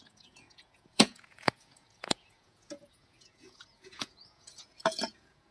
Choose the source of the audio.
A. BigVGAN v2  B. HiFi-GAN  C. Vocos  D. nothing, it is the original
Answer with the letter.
C